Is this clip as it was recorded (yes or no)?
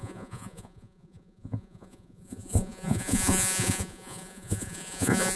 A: no